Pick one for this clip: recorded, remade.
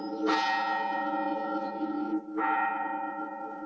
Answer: remade